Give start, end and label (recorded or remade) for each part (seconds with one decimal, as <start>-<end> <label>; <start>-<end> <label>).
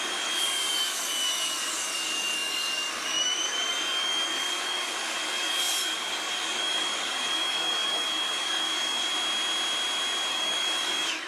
0.0-9.1 remade; 9.1-10.3 recorded; 10.3-11.3 remade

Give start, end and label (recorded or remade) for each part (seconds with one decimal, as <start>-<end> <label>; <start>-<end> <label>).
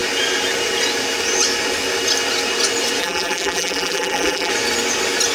0.0-3.0 recorded; 3.0-4.5 remade; 4.5-5.3 recorded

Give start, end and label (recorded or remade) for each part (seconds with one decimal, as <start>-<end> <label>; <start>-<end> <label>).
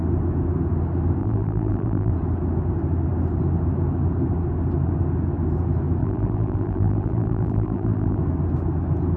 0.0-1.2 recorded; 1.2-2.1 remade; 2.1-6.0 recorded; 6.0-8.2 remade; 8.2-9.2 recorded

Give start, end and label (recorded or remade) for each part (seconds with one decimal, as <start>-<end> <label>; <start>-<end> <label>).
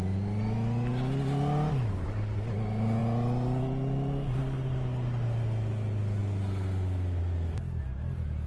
0.0-8.5 recorded